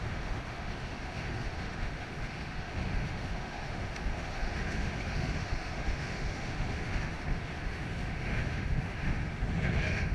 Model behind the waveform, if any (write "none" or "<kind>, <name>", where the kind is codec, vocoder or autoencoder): autoencoder, DAC-VAE